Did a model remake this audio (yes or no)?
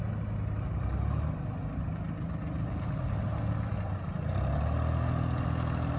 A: no